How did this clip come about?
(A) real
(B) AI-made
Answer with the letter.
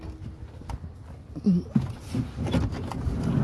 A